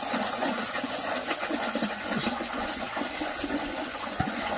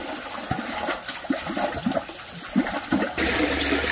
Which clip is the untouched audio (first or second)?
second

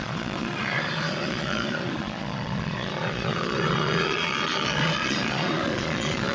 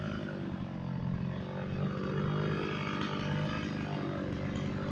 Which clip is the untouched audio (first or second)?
second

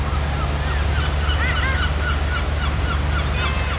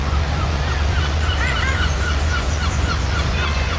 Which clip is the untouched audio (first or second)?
first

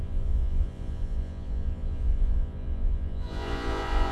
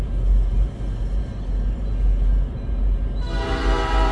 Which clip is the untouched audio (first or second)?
second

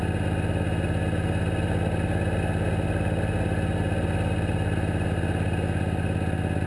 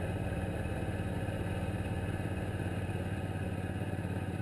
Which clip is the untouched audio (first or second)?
first